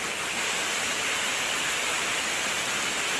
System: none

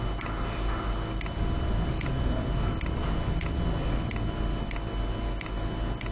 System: none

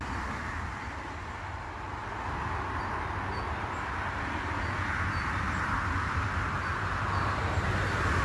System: none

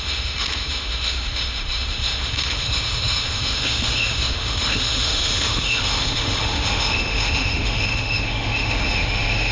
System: autoencoder, DAC-VAE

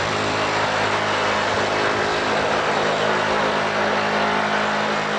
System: none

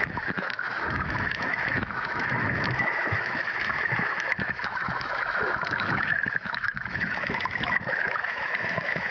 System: autoencoder, DAC-VAE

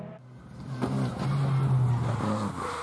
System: none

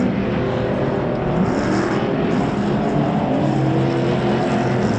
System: none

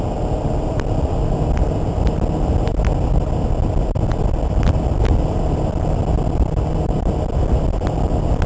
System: none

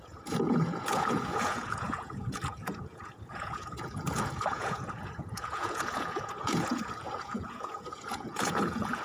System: vocoder, Vocos